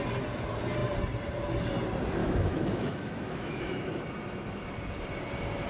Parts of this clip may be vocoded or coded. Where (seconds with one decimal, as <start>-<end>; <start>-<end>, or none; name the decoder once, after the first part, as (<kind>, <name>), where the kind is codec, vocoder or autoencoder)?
2.2-4.0 (autoencoder, DAC-VAE)